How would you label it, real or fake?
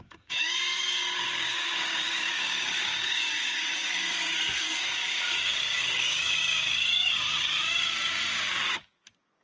fake